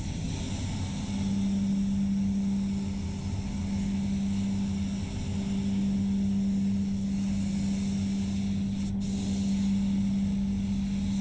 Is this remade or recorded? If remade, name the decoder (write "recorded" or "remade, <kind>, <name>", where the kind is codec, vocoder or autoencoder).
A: recorded